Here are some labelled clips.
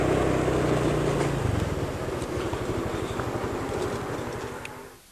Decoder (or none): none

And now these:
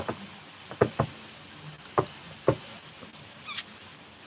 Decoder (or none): none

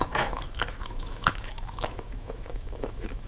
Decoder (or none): autoencoder, DAC-VAE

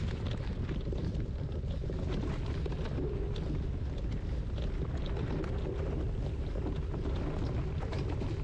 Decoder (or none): none